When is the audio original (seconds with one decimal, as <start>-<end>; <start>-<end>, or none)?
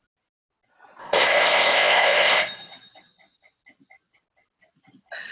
0.0-1.0; 2.4-5.3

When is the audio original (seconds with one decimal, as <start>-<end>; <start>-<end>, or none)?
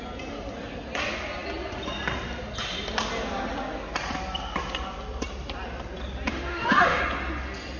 0.0-6.3; 7.0-7.8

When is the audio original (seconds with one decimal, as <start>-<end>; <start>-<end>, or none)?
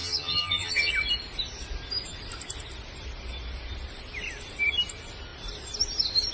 0.9-6.3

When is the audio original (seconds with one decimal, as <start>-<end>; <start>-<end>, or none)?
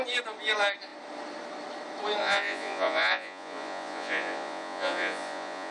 0.0-2.2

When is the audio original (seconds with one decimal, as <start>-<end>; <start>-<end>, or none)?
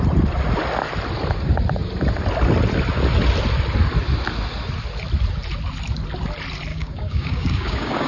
0.0-6.7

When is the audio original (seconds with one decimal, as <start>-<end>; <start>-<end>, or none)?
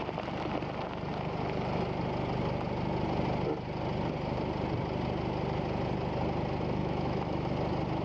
0.0-6.8; 7.5-8.0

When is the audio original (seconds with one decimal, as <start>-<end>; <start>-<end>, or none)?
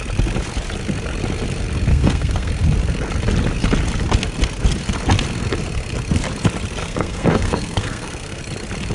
0.0-1.9; 2.5-6.8; 8.4-8.9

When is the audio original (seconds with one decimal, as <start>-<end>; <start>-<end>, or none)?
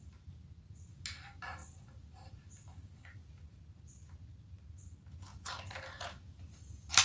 0.0-7.0